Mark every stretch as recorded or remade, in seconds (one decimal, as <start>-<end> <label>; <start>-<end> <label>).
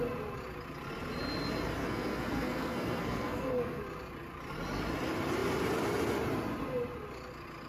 0.0-1.8 recorded; 1.8-3.8 remade; 3.8-7.7 recorded